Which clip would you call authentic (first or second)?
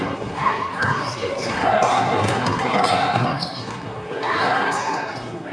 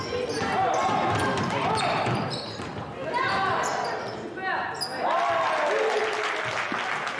second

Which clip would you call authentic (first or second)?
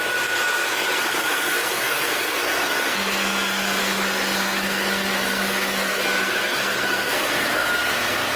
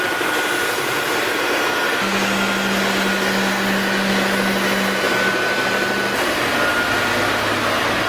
second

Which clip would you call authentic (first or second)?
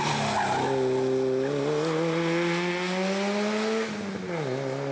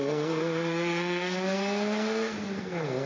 first